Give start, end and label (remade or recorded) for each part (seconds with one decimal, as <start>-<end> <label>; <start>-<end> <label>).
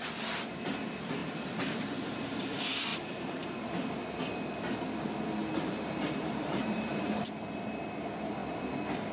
0.0-2.9 recorded; 2.9-4.2 remade; 4.2-5.4 recorded; 5.4-7.3 remade; 7.3-9.1 recorded